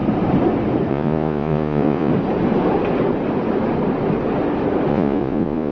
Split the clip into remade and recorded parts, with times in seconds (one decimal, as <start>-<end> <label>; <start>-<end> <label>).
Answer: 0.0-0.9 recorded; 0.9-2.1 remade; 2.1-4.9 recorded; 4.9-5.7 remade